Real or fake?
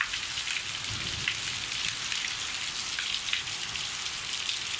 real